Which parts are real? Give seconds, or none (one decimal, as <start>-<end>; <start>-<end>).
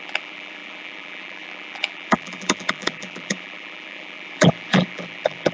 none